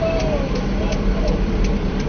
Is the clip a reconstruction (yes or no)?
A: yes